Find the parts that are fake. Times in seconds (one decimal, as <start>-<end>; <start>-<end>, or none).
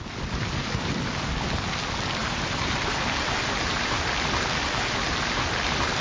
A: 2.2-4.1